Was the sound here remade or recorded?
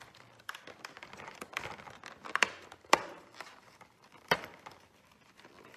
remade